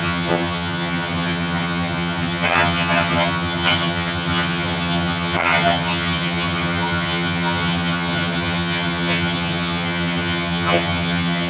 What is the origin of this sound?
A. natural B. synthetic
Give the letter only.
B